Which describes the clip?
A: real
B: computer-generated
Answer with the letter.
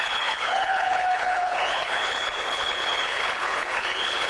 B